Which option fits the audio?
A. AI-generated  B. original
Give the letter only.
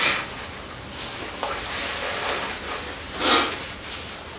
B